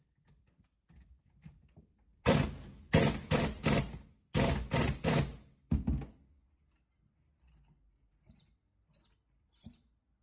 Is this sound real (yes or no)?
yes